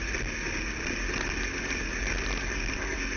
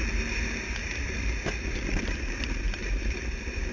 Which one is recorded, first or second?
first